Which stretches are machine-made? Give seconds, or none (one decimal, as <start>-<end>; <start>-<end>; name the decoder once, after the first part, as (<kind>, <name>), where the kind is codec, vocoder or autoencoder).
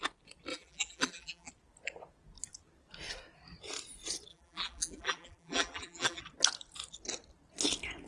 0.5-1.5 (vocoder, BigVGAN v2); 4.3-6.2